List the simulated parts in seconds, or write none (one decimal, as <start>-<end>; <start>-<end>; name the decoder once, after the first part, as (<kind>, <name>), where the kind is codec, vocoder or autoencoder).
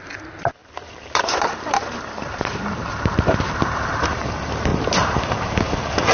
0.6-4.3 (vocoder, BigVGAN v2); 4.7-5.5